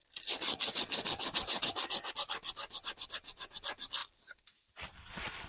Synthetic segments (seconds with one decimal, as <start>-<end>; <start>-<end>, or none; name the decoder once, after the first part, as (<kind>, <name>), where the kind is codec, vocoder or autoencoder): 4.0-4.8 (vocoder, BigVGAN v2)